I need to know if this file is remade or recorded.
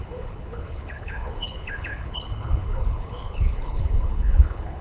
remade